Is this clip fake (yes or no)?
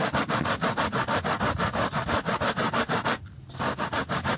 no